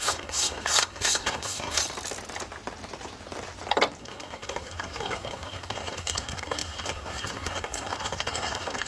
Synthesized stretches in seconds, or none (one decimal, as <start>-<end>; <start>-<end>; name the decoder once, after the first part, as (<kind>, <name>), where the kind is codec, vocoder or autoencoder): 0.0-1.8 (codec, SNAC); 4.0-8.9